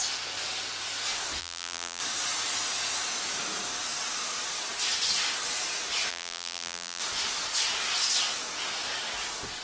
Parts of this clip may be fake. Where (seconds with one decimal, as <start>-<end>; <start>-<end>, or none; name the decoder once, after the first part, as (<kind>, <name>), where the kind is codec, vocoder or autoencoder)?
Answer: 1.4-2.0 (vocoder, BigVGAN v2); 6.1-7.0